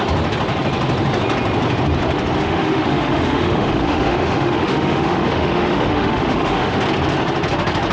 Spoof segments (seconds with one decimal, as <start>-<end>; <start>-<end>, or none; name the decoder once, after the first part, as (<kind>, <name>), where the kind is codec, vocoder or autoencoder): 2.4-6.8 (autoencoder, DAC-VAE)